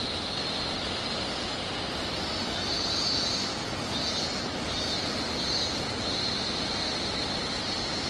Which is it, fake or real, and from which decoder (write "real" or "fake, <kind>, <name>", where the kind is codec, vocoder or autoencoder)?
real